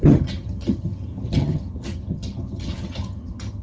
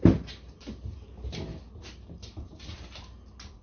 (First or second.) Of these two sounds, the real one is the second